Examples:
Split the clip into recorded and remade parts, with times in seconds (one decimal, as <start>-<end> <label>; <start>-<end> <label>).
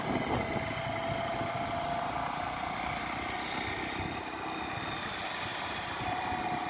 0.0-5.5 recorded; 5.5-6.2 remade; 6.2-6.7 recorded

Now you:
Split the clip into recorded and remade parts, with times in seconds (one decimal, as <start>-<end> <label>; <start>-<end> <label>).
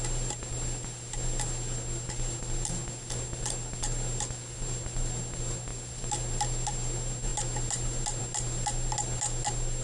0.0-9.8 recorded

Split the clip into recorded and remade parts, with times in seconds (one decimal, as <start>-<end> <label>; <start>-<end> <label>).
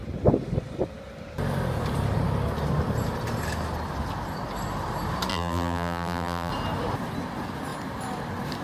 0.0-5.3 recorded; 5.3-6.5 remade; 6.5-8.6 recorded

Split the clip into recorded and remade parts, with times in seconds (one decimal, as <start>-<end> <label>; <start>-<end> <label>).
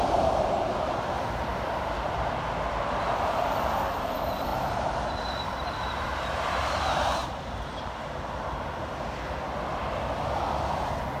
0.0-1.5 remade; 1.5-2.7 recorded; 2.7-7.2 remade; 7.2-11.2 recorded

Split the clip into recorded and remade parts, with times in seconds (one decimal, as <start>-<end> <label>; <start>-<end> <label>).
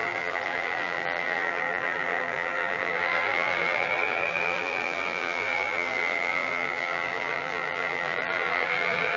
0.0-9.2 remade